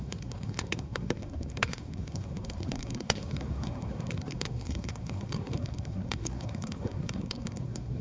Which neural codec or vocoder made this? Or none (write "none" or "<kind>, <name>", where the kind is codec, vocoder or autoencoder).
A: codec, SNAC